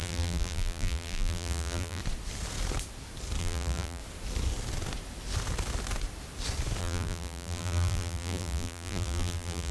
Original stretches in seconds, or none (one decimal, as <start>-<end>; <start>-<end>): 2.0-3.4; 4.0-6.8